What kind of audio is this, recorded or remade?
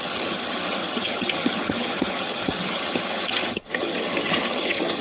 remade